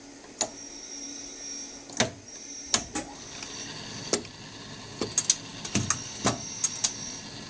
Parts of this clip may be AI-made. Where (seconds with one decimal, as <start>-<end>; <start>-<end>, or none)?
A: none